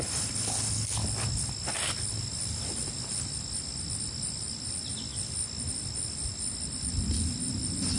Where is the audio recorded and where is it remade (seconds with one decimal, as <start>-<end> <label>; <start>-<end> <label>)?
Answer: 0.0-8.0 recorded